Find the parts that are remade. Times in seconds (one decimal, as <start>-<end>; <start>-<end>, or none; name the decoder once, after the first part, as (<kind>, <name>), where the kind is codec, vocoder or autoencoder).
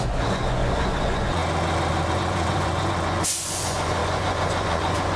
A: 0.0-1.4 (vocoder, Vocos); 2.1-5.2